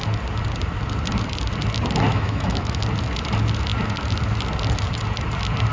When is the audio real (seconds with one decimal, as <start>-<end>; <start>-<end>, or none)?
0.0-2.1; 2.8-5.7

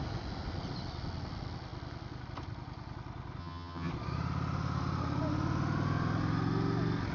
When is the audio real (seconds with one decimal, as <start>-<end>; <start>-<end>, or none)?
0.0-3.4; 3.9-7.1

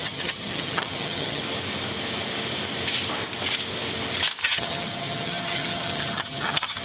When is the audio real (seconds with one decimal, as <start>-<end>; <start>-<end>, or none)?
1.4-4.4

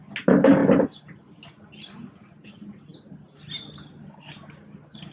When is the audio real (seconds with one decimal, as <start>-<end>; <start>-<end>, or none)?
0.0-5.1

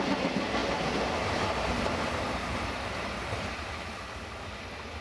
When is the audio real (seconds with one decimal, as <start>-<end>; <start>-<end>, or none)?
0.0-5.0